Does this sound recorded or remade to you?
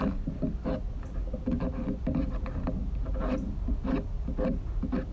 recorded